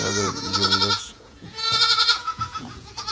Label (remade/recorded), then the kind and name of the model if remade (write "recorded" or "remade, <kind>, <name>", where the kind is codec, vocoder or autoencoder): remade, vocoder, Vocos